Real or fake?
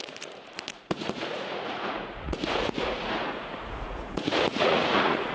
fake